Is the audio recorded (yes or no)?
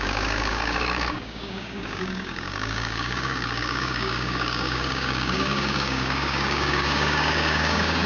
no